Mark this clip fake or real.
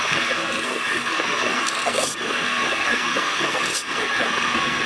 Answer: fake